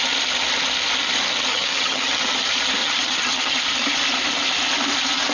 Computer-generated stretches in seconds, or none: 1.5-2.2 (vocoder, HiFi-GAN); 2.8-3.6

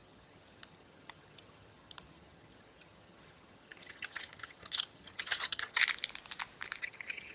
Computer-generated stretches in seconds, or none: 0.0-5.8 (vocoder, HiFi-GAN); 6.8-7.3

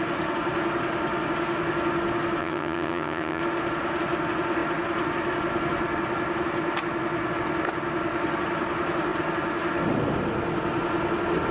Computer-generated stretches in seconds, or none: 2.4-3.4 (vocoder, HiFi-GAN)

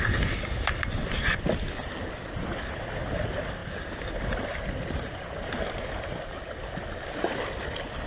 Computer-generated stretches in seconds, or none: none

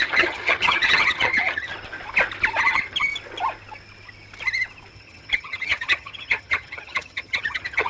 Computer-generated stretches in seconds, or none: 0.0-1.7 (vocoder, HiFi-GAN); 2.6-3.1; 4.9-7.9

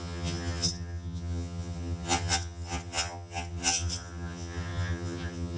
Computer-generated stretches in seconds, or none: 0.0-5.6 (vocoder, HiFi-GAN)